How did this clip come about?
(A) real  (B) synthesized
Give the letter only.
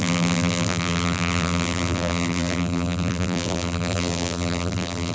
B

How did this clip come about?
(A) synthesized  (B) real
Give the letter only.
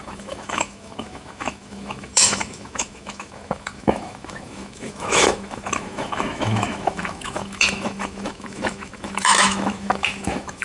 A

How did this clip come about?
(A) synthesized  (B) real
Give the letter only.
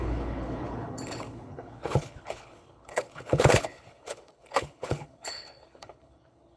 A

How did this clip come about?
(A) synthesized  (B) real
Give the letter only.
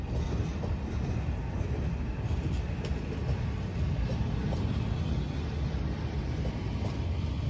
B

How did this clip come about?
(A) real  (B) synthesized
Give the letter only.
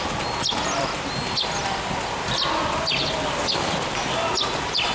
A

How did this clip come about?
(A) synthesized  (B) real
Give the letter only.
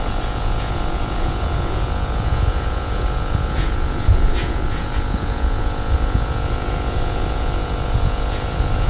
A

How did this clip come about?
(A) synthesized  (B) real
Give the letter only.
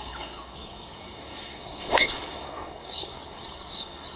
A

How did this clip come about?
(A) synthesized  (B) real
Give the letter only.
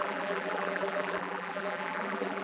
A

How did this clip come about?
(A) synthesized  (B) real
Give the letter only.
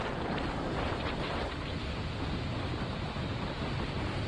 A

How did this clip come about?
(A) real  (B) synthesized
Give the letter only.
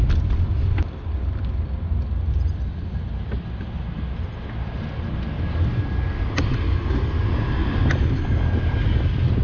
A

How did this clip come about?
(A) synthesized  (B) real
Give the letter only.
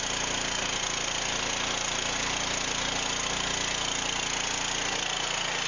B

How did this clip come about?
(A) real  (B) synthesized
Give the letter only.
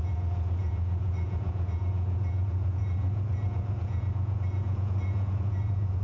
B